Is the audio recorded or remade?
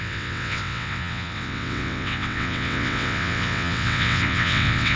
remade